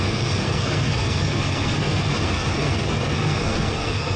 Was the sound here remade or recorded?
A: remade